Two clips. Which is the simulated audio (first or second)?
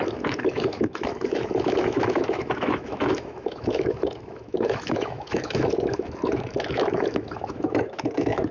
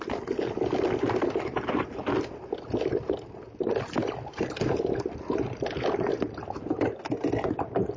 first